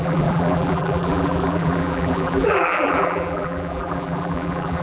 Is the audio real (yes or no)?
no